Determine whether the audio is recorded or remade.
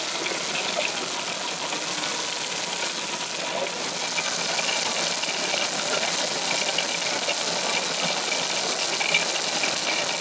recorded